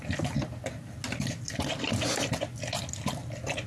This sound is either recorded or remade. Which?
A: recorded